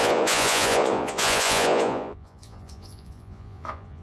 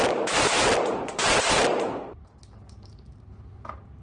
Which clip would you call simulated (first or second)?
first